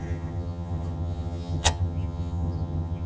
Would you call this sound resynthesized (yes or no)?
yes